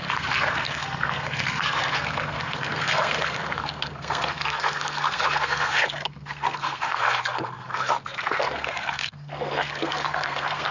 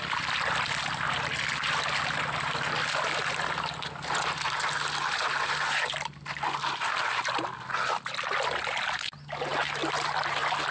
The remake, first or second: first